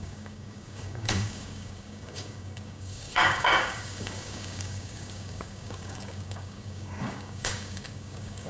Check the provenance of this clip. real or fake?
fake